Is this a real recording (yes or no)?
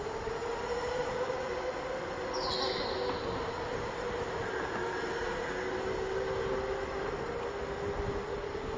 yes